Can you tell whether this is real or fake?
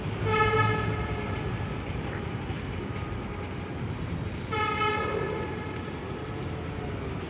real